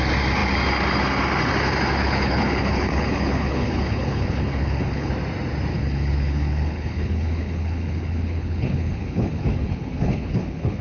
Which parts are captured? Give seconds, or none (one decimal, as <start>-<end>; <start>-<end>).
0.0-2.0; 5.1-5.7